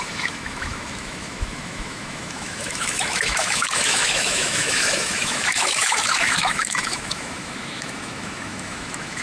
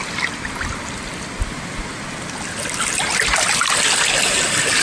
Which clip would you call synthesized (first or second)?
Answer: first